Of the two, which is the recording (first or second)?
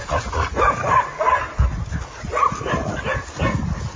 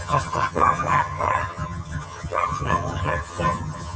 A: first